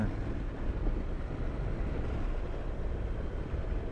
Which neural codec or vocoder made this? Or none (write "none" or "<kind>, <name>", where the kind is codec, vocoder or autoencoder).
none